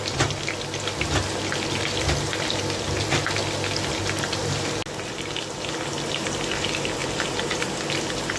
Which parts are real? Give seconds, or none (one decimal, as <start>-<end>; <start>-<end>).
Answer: 0.0-7.0; 7.6-8.4